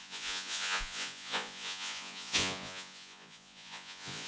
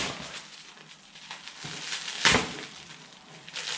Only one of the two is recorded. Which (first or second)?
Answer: second